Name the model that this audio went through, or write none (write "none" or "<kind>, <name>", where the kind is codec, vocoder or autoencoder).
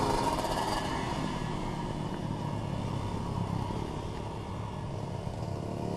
none